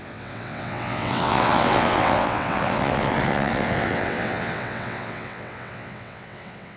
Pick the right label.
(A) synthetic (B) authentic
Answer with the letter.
A